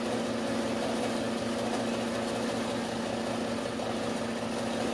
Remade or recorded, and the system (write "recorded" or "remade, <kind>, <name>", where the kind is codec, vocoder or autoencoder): recorded